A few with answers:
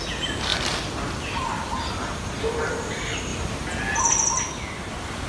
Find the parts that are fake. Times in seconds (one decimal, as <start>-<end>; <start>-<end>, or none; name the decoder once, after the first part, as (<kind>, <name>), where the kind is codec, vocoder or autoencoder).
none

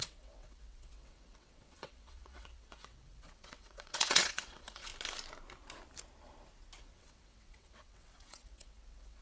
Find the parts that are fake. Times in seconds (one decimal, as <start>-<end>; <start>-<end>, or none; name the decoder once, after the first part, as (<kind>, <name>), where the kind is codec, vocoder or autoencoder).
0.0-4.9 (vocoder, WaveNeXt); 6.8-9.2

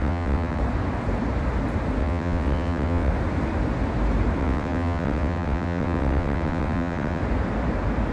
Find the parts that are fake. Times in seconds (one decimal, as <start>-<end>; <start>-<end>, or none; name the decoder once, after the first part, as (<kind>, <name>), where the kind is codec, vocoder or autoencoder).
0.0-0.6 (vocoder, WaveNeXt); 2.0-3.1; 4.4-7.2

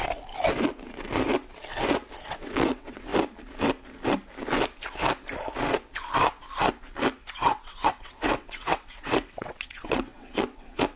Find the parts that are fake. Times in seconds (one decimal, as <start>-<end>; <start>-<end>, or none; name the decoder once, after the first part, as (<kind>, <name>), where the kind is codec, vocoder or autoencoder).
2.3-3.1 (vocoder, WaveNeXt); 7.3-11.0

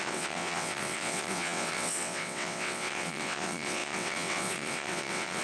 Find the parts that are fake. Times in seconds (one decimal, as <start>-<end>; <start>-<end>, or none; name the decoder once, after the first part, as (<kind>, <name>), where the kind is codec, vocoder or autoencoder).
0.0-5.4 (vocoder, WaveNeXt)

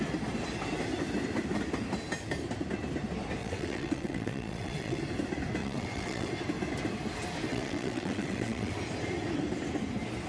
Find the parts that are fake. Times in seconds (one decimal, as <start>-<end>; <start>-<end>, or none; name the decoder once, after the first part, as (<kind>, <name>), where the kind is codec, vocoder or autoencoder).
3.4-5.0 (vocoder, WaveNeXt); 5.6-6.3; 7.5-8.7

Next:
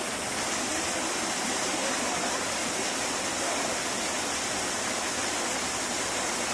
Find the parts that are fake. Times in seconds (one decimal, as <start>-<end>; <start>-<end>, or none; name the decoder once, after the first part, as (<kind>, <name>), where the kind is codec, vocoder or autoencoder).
none